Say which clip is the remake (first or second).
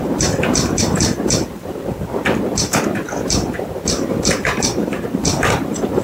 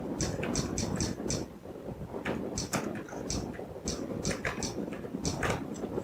first